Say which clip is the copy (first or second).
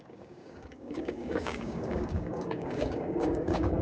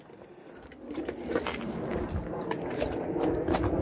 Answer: first